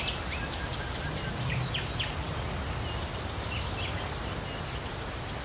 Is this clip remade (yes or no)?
no